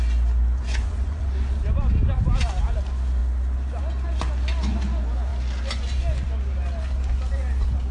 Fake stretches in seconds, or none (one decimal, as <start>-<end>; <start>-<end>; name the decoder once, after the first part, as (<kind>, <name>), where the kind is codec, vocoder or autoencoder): 0.6-1.3 (vocoder, Vocos)